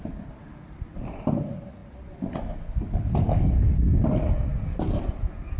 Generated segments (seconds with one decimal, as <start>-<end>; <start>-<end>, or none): none